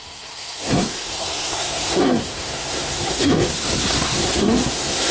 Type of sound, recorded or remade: remade